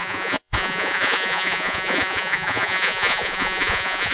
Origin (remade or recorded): remade